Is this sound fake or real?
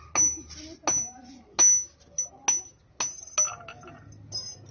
real